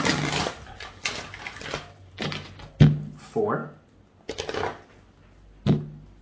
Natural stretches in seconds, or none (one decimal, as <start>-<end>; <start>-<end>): 0.0-6.2